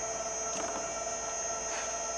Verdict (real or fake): real